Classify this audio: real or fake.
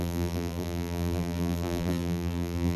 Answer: fake